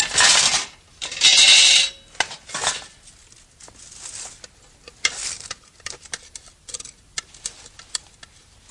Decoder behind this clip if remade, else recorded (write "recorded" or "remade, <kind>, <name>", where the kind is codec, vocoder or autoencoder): recorded